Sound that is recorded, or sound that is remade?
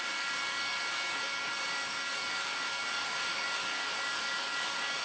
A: remade